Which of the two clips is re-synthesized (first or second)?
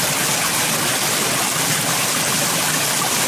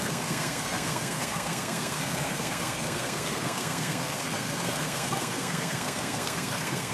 second